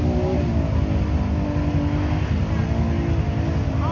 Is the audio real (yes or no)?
yes